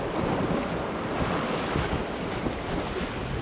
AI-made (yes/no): no